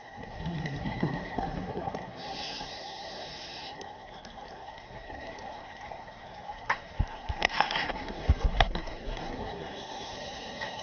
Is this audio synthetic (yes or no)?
yes